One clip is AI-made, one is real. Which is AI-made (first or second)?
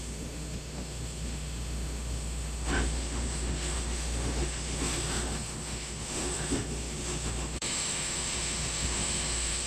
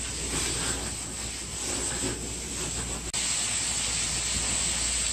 first